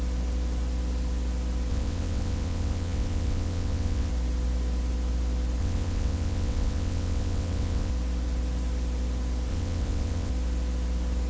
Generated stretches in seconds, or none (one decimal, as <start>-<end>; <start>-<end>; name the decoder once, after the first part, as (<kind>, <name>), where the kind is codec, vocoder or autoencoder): 1.7-4.1 (vocoder, WaveNeXt); 5.6-7.9; 9.5-10.3

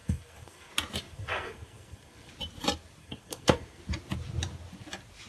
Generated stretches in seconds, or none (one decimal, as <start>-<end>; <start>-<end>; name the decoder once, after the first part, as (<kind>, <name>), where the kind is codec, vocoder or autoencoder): 0.0-0.7 (codec, SNAC); 1.1-2.3; 3.0-3.8

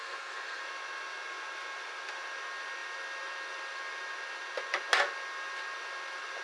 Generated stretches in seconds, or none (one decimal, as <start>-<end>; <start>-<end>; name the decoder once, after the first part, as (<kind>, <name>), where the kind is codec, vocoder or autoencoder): 0.0-0.6 (codec, SNAC)

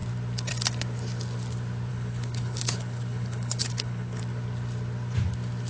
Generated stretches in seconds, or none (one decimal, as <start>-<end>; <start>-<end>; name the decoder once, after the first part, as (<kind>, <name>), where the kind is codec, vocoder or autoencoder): 1.9-4.2 (codec, HILCodec)

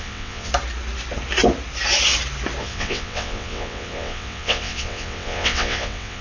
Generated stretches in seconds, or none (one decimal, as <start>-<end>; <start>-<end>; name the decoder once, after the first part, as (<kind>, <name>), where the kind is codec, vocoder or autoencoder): 0.0-0.5 (vocoder, WaveNeXt); 2.6-6.2

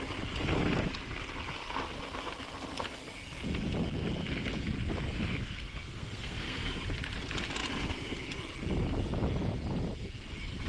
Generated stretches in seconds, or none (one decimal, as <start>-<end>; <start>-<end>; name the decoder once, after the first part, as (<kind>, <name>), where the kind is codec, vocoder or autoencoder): 5.4-6.6 (codec, SNAC)